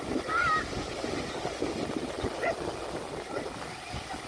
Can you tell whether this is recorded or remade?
recorded